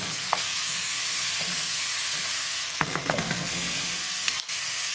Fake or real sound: fake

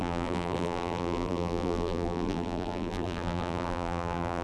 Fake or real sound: fake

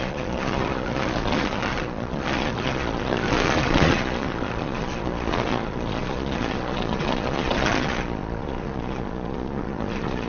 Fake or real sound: fake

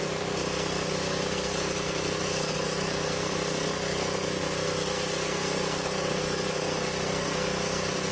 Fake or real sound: fake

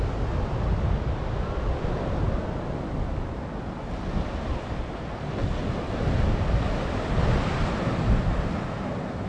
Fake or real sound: real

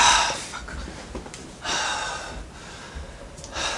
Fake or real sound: real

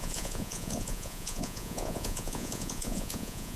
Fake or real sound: fake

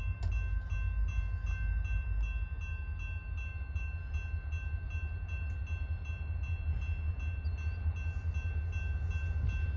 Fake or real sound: real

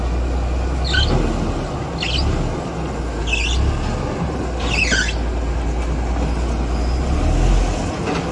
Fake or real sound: real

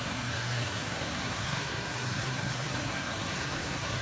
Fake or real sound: fake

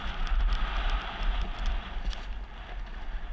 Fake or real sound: real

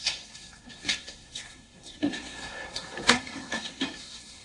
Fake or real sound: fake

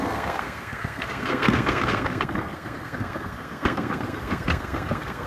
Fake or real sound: fake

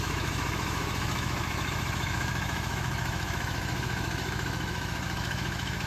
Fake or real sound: fake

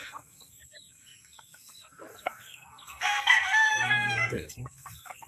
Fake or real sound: fake